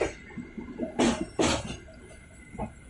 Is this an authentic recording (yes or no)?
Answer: yes